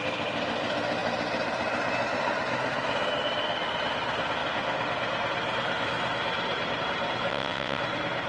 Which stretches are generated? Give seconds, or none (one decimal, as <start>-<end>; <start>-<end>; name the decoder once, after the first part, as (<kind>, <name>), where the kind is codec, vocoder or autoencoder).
7.3-7.8 (vocoder, WaveNeXt)